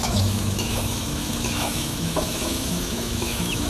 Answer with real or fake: fake